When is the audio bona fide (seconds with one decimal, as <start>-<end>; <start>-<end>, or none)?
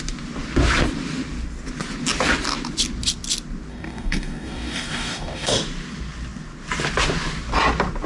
0.0-3.7; 5.5-8.1